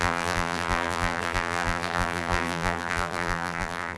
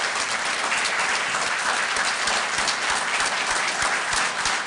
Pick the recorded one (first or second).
second